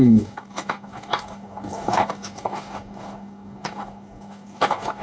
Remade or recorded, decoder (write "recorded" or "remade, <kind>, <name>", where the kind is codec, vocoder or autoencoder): remade, codec, DAC